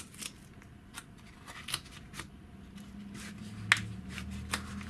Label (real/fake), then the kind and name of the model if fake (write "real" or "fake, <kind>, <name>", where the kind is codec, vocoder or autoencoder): real